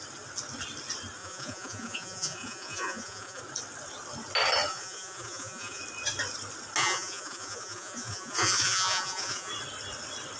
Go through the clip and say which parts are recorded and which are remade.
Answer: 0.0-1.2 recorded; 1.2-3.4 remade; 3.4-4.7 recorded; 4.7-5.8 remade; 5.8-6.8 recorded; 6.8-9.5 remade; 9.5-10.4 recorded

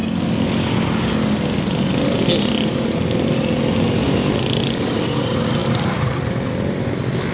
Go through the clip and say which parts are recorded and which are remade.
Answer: 0.0-5.6 recorded; 5.6-7.3 remade

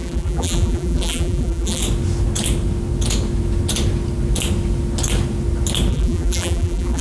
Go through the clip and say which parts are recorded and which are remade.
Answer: 0.0-1.8 remade; 1.8-5.9 recorded; 5.9-7.0 remade

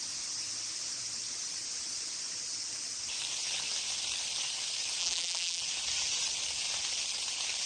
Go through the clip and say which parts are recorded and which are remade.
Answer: 0.0-5.0 recorded; 5.0-5.6 remade; 5.6-7.7 recorded

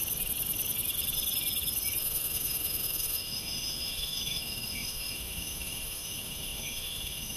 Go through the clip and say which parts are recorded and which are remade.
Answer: 0.0-2.0 recorded; 2.0-7.4 remade

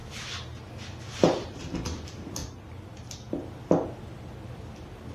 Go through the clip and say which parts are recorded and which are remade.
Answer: 0.0-5.1 recorded

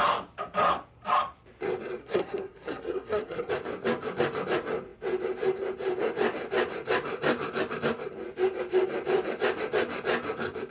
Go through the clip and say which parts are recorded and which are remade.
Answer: 0.0-2.0 recorded; 2.0-3.5 remade; 3.5-10.7 recorded